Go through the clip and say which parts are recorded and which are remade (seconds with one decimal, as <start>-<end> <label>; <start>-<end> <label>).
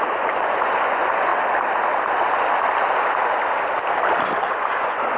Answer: 0.0-1.3 remade; 1.3-4.4 recorded; 4.4-5.2 remade